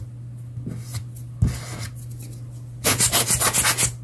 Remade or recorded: recorded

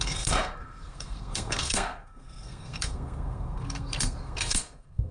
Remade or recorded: remade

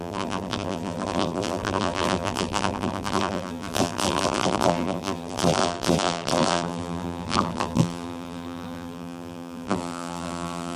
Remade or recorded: remade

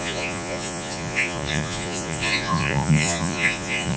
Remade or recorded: remade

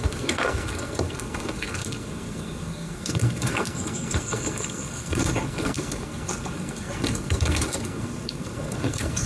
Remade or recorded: remade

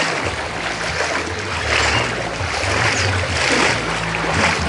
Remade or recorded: recorded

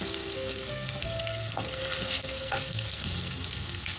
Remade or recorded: remade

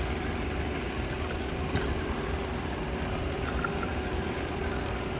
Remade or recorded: recorded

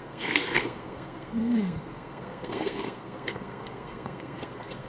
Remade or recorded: remade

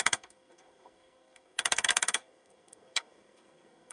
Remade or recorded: remade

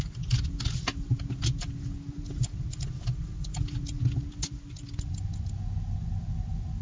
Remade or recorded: recorded